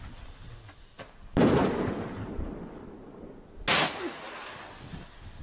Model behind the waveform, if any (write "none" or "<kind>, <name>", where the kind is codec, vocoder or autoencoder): none